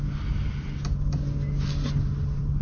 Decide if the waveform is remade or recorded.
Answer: recorded